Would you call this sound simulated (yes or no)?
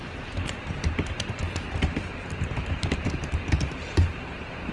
yes